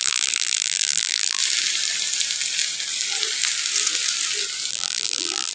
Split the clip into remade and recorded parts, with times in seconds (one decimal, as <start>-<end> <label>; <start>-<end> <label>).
0.0-1.4 remade; 1.4-4.7 recorded; 4.7-5.5 remade